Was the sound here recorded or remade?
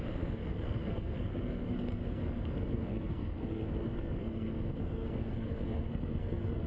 remade